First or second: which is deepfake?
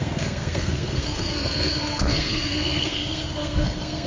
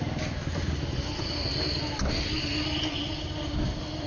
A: first